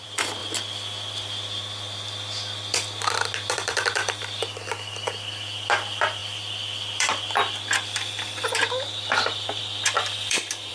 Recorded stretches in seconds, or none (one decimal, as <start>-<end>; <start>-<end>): 0.4-3.5